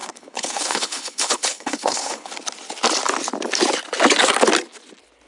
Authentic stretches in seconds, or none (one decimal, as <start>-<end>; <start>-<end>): 2.3-5.3